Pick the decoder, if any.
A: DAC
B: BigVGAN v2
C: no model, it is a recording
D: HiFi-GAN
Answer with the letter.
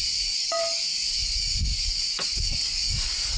A